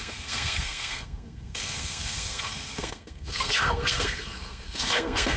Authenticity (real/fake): fake